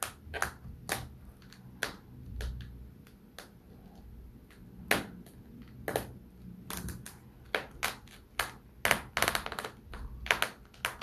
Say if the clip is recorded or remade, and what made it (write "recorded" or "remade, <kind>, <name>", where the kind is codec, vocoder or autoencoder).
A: recorded